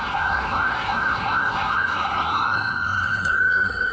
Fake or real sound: fake